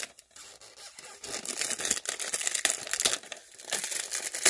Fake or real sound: real